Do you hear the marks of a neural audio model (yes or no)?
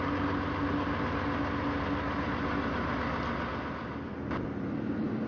no